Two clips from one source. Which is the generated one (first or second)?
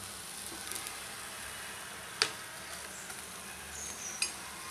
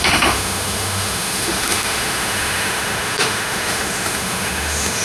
second